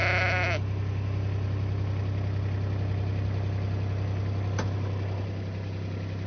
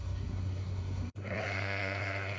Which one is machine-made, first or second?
second